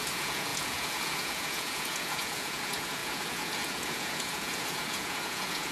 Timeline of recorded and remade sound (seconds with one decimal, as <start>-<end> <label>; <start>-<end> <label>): 0.0-5.7 remade